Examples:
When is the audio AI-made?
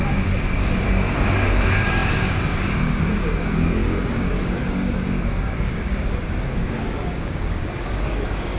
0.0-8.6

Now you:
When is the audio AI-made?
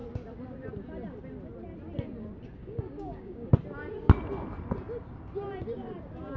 2.6-3.5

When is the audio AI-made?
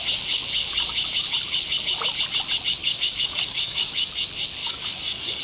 2.8-4.1; 4.6-5.4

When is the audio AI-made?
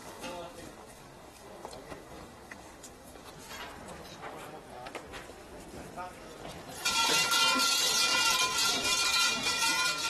0.0-3.3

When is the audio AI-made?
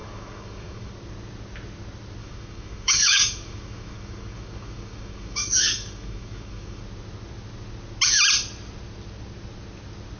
0.0-0.9; 2.2-6.8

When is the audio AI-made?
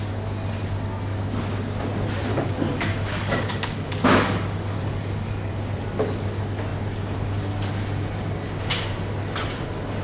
2.3-5.5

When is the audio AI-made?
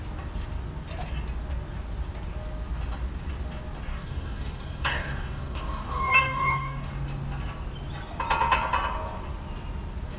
3.9-6.9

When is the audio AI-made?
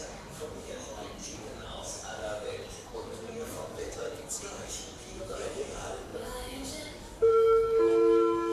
0.0-8.5